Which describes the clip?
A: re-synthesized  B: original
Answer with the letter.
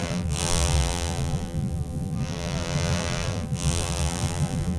A